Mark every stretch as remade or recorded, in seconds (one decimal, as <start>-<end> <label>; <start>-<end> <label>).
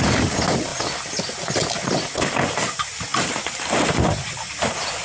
0.0-3.1 recorded; 3.1-3.9 remade; 3.9-5.0 recorded